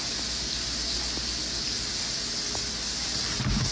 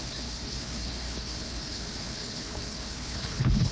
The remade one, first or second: second